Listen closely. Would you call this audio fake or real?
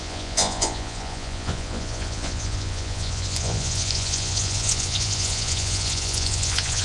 fake